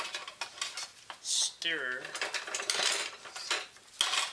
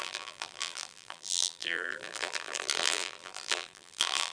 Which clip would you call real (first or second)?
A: first